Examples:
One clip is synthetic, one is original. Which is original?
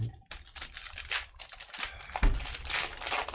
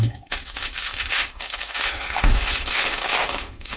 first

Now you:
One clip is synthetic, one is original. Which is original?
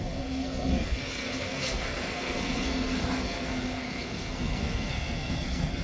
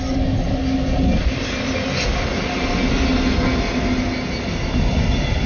second